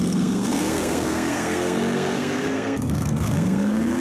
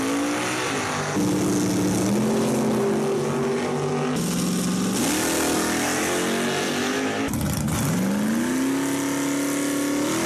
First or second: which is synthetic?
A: first